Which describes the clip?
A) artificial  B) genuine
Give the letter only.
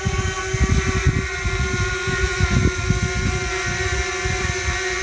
B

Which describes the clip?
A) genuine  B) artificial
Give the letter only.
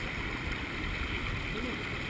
A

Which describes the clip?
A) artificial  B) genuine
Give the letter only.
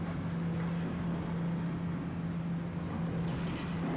B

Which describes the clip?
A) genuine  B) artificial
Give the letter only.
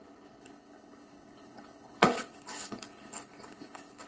B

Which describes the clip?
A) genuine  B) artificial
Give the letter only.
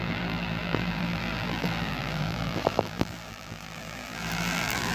B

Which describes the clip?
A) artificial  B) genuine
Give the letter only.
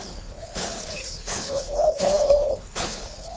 A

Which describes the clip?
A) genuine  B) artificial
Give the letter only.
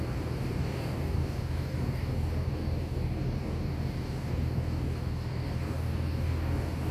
B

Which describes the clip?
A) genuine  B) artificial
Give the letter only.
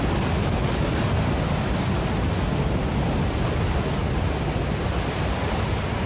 A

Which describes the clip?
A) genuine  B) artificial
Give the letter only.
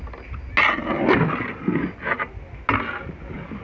A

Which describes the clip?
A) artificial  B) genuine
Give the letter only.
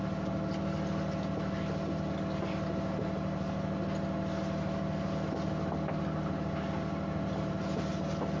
B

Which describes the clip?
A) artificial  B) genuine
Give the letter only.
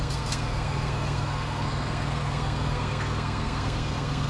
A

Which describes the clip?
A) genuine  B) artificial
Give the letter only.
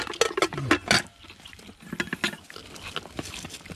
A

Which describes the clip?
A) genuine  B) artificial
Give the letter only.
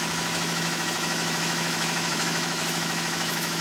B